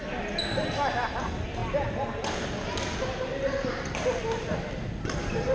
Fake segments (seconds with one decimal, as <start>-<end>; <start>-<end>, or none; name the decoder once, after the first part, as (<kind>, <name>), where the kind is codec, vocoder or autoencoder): none